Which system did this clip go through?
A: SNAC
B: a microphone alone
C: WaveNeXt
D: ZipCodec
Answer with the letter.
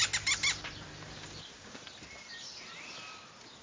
B